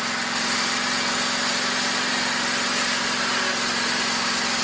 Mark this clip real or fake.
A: real